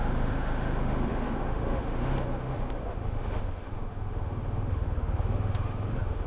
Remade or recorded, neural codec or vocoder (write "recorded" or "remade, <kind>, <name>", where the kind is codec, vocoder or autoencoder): remade, autoencoder, DAC-VAE